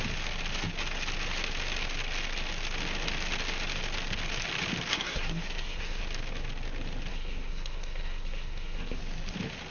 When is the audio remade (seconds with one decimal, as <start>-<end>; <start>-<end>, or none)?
4.9-6.0; 7.1-9.0